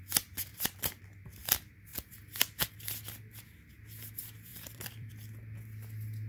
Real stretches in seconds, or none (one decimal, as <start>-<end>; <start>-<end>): 0.0-0.5; 1.0-4.5; 5.1-6.3